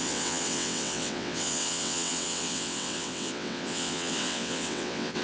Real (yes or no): no